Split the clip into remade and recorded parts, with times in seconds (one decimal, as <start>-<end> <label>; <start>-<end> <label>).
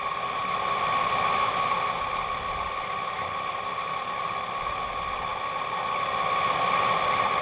0.0-0.4 recorded; 0.4-4.8 remade; 4.8-7.4 recorded